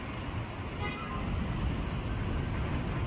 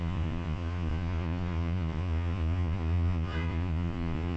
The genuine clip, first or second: first